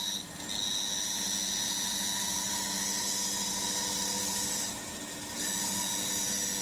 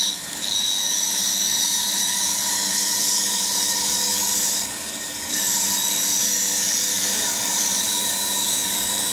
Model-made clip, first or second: second